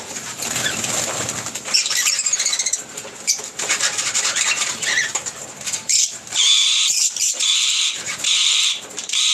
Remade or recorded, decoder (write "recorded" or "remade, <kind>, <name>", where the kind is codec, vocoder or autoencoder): remade, vocoder, BigVGAN v2